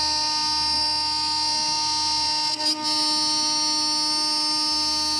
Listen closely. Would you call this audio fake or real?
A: real